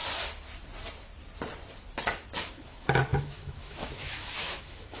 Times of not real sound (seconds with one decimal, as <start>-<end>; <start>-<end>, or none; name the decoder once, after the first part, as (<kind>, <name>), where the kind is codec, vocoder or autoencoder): 2.4-5.0 (autoencoder, DAC-VAE)